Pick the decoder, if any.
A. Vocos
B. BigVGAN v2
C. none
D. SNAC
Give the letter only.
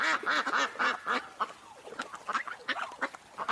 C